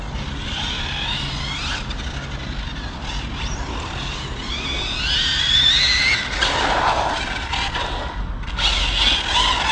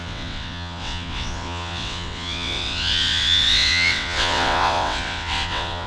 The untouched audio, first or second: first